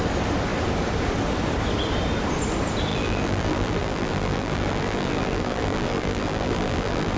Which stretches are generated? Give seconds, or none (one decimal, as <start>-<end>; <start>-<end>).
2.9-7.2